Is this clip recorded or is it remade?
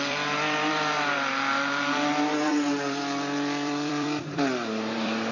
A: remade